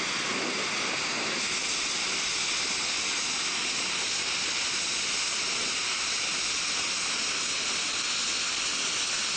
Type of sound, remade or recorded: recorded